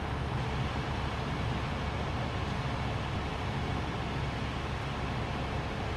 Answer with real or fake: real